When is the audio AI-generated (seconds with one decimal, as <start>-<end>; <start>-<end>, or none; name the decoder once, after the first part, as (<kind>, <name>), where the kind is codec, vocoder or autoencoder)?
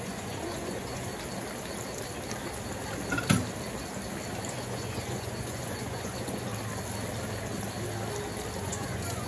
0.0-1.1 (vocoder, Vocos); 4.5-6.5; 8.6-9.3